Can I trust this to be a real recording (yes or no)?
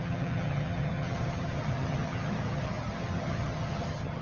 no